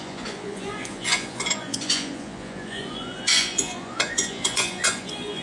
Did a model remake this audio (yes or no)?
yes